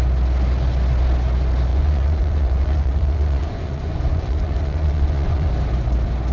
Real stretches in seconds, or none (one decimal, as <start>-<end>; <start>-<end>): 0.0-1.7; 5.5-6.3